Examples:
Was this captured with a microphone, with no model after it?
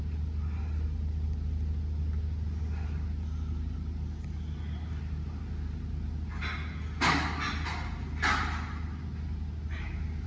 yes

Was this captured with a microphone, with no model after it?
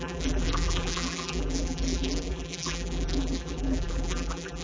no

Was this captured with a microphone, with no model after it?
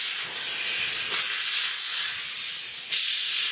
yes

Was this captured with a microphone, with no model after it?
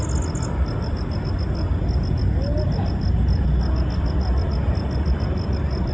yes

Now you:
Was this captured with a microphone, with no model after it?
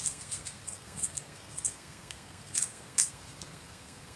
no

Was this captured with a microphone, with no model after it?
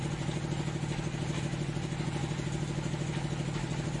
yes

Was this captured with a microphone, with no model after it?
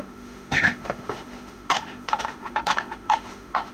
no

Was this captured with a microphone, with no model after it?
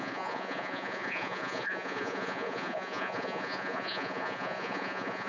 no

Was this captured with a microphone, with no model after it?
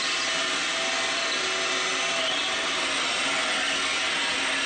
yes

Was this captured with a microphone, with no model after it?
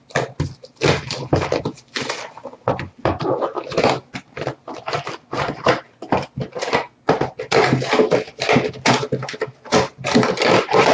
yes